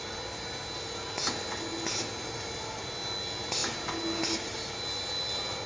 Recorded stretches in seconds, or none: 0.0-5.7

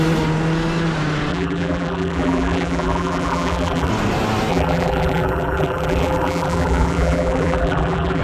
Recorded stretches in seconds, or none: 0.0-1.3; 3.9-4.5

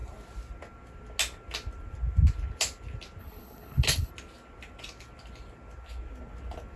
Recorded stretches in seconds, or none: 0.0-3.2; 4.1-6.8

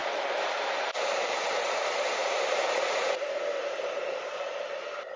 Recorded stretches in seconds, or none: 0.0-0.5

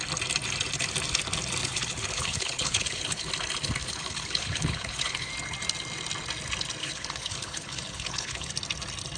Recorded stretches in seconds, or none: 0.0-1.6; 3.3-3.8; 5.3-6.8; 8.5-9.2

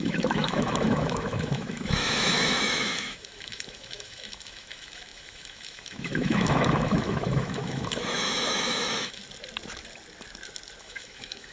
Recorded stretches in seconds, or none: 9.2-10.8

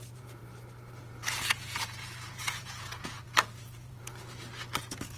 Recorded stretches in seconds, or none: 0.4-1.0; 4.1-4.8